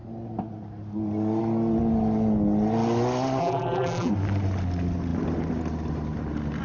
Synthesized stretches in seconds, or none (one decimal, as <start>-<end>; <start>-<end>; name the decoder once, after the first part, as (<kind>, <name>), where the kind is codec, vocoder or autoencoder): 3.4-4.1 (vocoder, BigVGAN v2)

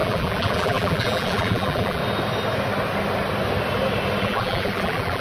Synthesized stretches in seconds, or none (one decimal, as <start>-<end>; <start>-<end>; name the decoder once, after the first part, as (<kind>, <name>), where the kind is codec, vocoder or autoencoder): 0.0-2.0 (vocoder, BigVGAN v2); 4.2-5.2

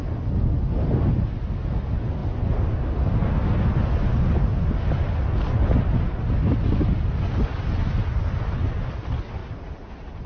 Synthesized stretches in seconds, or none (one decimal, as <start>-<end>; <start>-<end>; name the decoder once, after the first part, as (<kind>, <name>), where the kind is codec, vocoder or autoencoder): none

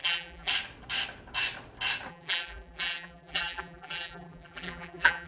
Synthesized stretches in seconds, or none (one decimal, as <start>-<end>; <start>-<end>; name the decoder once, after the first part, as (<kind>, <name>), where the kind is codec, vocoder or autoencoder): 0.0-0.5 (vocoder, BigVGAN v2); 2.1-5.3